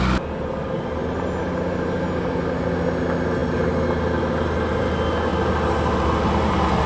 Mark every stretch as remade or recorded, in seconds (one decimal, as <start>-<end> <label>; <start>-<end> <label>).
0.0-6.9 recorded